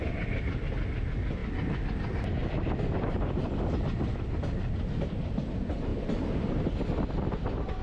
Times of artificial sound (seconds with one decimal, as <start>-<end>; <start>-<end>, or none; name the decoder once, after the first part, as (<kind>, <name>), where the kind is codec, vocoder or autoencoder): none